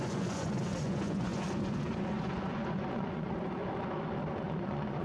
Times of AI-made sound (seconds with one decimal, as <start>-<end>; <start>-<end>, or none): 0.0-3.6; 4.3-5.0